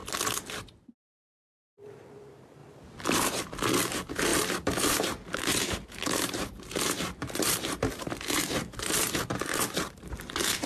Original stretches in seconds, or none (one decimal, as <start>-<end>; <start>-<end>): 0.0-1.7; 2.6-3.1